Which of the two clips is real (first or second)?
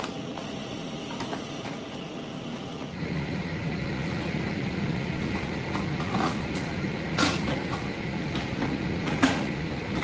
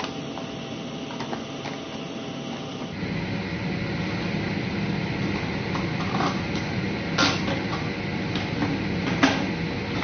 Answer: second